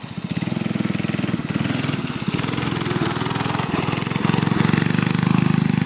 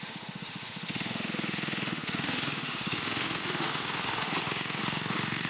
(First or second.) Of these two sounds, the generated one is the second